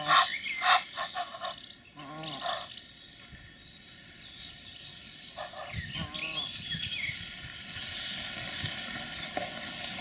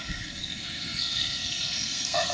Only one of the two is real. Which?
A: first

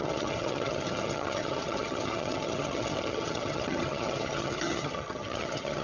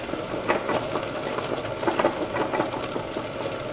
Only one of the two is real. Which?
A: second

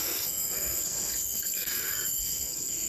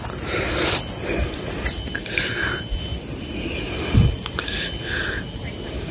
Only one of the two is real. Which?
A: second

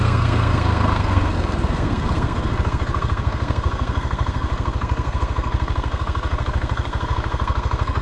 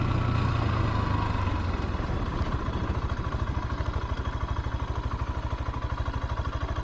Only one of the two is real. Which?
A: second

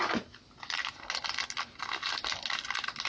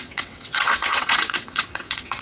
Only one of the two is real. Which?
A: first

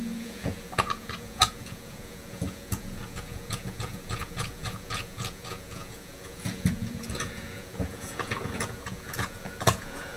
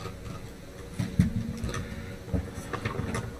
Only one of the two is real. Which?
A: second